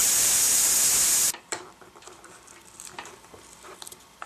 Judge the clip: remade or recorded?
recorded